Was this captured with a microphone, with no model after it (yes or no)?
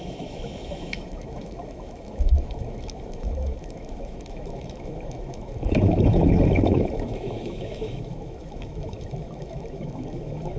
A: no